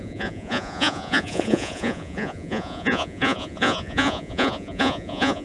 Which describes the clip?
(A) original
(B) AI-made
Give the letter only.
B